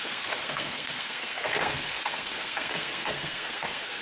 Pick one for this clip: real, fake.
fake